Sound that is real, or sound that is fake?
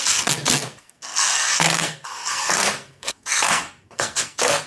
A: fake